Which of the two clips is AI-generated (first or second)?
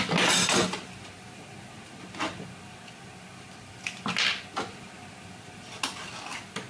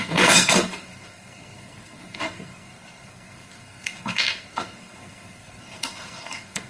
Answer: second